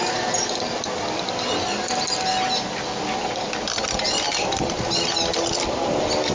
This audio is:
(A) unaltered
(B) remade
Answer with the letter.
A